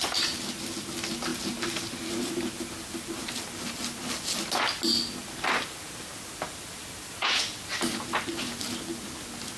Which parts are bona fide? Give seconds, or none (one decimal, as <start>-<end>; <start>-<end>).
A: 0.0-9.6